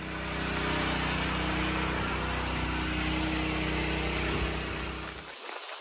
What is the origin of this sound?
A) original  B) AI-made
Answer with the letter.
A